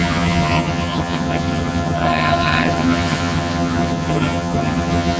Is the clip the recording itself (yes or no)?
no